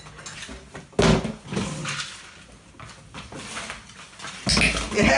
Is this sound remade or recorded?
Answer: recorded